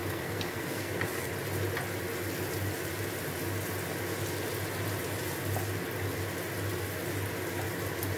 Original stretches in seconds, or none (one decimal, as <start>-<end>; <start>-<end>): 1.3-8.2